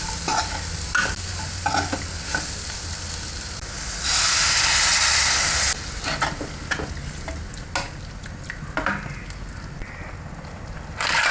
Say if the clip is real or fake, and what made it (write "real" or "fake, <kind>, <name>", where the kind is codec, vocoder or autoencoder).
real